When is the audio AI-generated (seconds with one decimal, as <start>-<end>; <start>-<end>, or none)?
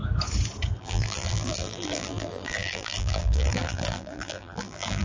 0.8-5.0